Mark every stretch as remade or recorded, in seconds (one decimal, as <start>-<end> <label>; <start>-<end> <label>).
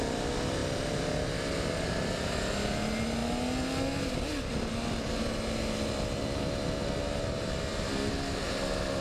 0.0-9.0 recorded